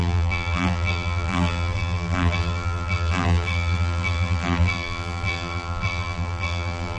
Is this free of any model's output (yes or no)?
no